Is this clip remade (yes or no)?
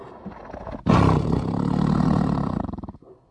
no